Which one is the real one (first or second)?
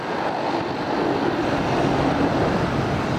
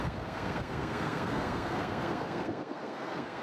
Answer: first